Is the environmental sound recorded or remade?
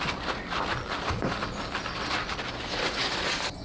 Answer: recorded